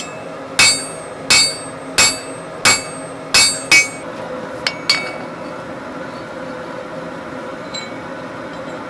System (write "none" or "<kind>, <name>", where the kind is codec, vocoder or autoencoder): none